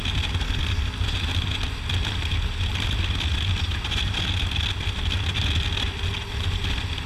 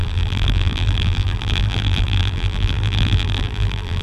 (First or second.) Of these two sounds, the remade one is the second